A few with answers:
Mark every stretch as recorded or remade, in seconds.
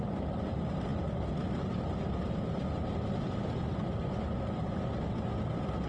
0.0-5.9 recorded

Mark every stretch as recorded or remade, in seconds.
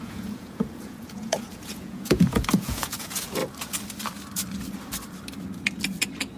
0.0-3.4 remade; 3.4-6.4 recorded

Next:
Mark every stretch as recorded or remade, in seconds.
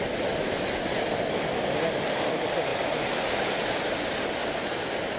0.0-5.2 recorded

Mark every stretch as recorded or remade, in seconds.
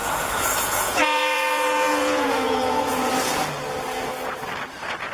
0.0-3.1 remade; 3.1-5.1 recorded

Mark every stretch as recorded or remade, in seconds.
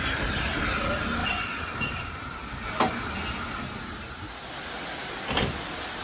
0.0-6.0 recorded